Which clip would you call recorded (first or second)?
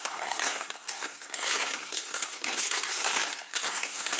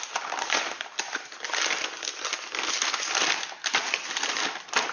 second